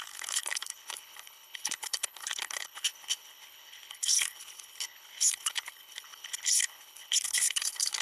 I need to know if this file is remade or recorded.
remade